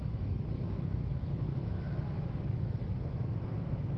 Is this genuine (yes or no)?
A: no